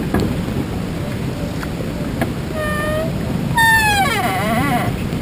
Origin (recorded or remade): remade